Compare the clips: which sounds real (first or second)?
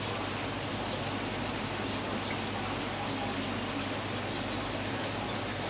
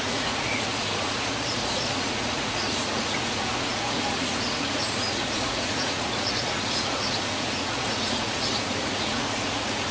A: first